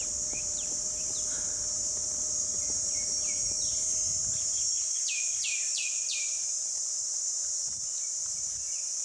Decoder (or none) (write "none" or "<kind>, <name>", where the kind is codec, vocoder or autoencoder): vocoder, BigVGAN v2